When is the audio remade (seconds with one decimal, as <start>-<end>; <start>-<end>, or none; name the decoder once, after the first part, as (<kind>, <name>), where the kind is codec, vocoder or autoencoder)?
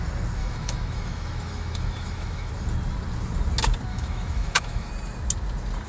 0.4-2.5 (autoencoder, DAC-VAE); 3.9-4.9